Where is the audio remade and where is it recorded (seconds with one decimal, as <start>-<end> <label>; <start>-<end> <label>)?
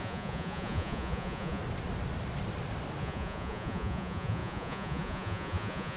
0.0-1.6 remade; 1.6-3.0 recorded; 3.0-6.0 remade